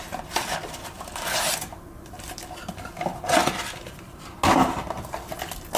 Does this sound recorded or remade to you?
recorded